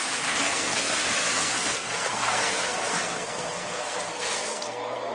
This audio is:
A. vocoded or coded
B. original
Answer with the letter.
A